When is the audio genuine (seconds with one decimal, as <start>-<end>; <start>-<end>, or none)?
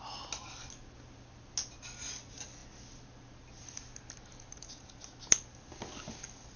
0.0-6.6